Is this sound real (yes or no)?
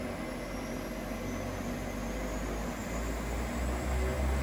yes